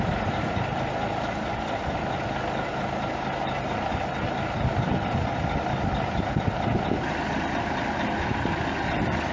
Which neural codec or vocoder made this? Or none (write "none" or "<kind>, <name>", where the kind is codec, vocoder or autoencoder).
none